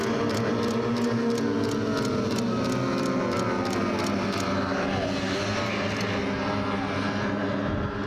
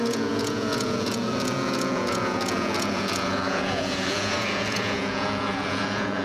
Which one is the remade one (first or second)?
second